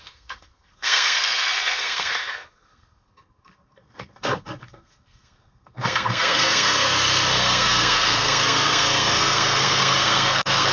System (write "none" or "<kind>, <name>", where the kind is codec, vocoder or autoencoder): codec, SNAC